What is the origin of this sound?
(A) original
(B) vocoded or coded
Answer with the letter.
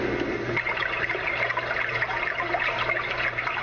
A